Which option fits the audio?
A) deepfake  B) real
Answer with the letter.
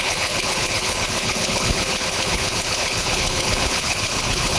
A